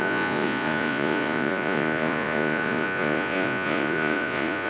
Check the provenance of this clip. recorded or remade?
remade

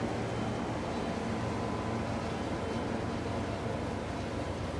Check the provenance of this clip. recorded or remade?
recorded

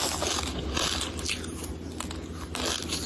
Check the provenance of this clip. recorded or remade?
recorded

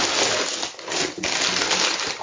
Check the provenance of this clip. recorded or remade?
recorded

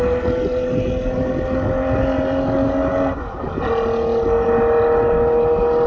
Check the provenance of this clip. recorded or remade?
recorded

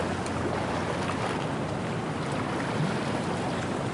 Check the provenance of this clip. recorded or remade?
recorded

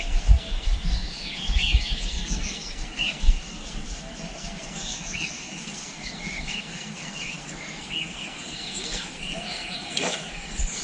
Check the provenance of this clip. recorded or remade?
remade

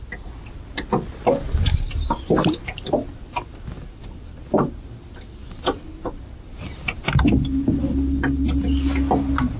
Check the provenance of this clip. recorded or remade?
recorded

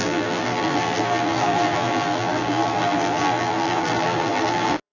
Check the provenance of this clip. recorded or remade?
remade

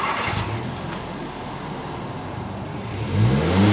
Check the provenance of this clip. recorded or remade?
recorded